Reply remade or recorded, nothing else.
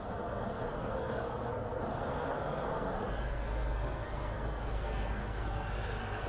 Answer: remade